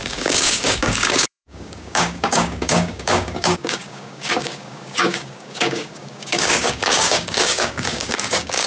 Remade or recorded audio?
remade